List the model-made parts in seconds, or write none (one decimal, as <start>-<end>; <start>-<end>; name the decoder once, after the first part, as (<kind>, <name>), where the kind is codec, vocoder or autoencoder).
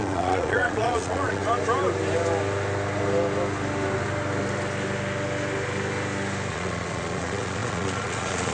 0.0-1.4 (vocoder, Vocos); 6.5-8.5